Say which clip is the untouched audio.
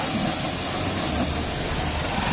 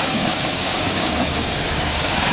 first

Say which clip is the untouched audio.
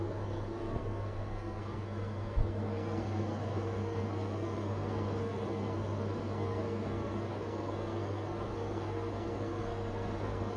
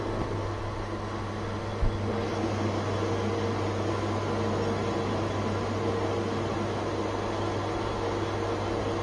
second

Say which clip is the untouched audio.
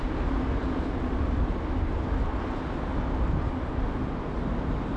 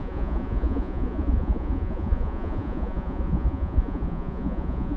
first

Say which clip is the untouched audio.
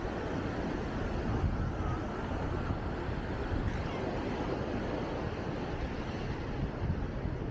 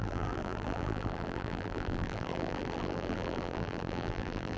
first